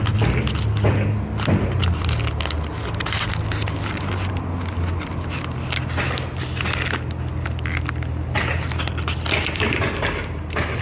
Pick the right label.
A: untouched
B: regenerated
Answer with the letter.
A